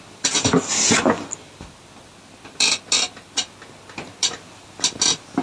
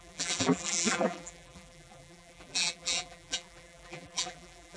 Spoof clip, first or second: second